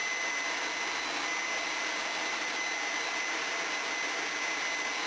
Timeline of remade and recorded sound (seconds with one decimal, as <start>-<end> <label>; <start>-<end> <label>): 0.0-5.1 recorded